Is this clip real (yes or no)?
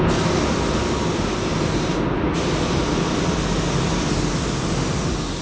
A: yes